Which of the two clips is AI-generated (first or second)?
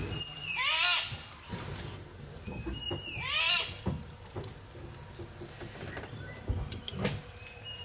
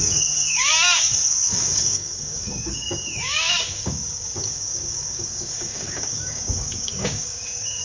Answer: second